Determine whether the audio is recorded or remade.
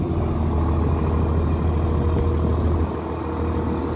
recorded